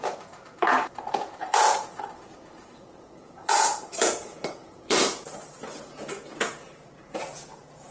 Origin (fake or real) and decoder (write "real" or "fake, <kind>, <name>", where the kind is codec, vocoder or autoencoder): fake, vocoder, Vocos